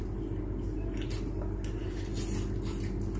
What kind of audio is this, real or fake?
real